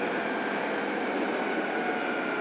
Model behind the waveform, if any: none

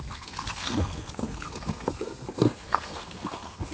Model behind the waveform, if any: codec, SNAC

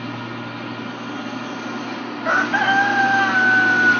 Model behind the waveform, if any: none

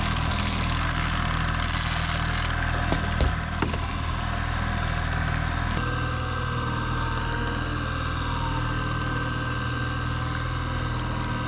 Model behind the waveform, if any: none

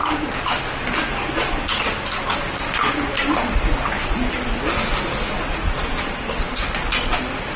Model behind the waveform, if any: none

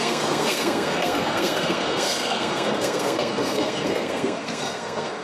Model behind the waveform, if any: codec, SNAC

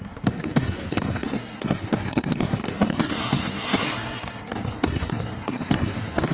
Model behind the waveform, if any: codec, SNAC